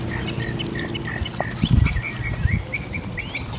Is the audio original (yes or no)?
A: yes